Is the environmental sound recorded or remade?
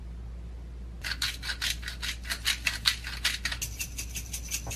recorded